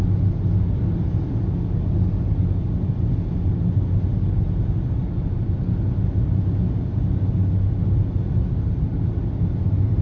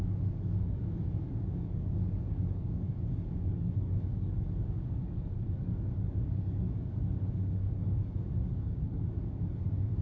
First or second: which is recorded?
first